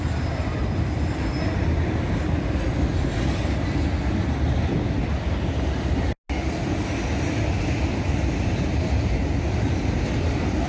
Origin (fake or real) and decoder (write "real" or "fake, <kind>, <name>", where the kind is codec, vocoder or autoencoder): real